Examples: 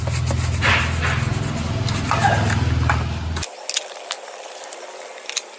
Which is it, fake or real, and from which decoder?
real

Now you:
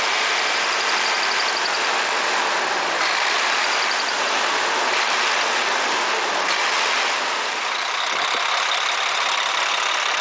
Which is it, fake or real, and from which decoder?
real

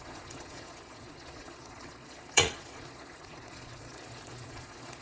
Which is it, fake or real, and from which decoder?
fake, vocoder, Vocos